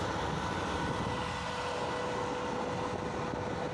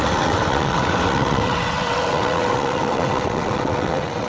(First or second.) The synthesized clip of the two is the second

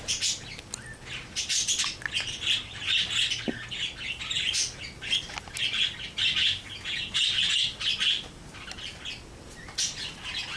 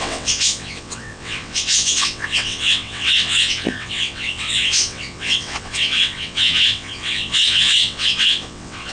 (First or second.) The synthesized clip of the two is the second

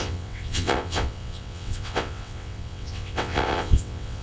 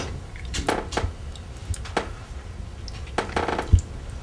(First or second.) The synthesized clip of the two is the first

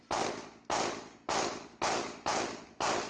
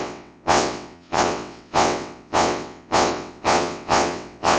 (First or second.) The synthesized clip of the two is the second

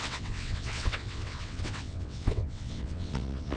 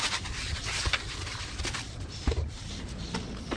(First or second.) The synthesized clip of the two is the first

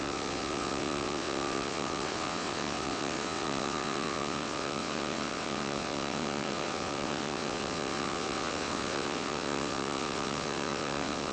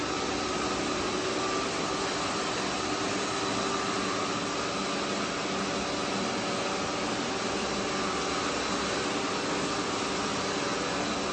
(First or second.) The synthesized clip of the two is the first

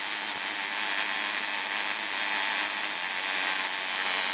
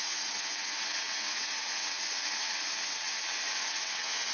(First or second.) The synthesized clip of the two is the second